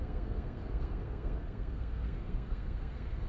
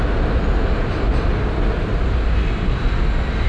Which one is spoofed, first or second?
first